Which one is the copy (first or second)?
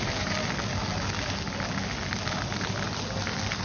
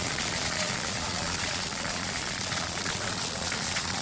second